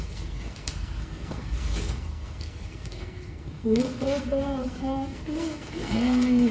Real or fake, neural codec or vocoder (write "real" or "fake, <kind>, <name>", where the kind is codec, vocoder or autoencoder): fake, codec, SNAC